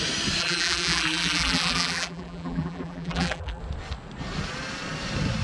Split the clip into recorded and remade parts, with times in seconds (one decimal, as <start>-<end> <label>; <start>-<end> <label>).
0.0-0.4 recorded; 0.4-3.6 remade; 3.6-5.4 recorded